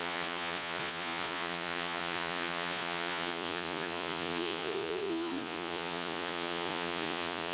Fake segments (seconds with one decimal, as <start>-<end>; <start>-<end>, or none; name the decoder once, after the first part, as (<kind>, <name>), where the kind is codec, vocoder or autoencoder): 0.0-7.5 (vocoder, Vocos)